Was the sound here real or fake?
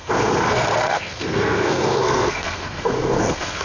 fake